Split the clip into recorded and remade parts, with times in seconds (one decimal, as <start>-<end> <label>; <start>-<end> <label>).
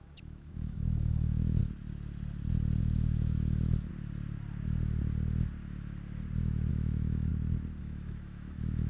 0.0-1.6 remade; 1.6-2.8 recorded; 2.8-3.9 remade; 3.9-6.7 recorded; 6.7-7.3 remade; 7.3-7.8 recorded; 7.8-8.9 remade